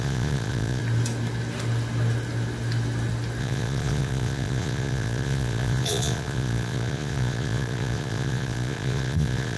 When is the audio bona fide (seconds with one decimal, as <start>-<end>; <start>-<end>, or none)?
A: 0.8-3.4